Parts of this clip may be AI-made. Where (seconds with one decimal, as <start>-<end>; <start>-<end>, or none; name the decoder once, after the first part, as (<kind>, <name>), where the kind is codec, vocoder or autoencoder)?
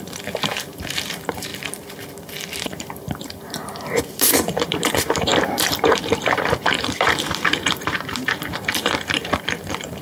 0.0-1.5 (vocoder, BigVGAN v2); 2.6-10.0